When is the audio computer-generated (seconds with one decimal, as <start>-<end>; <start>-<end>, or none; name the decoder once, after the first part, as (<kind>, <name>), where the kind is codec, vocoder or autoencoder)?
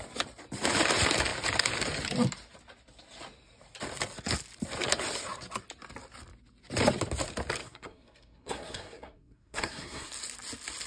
7.6-10.1 (codec, SNAC)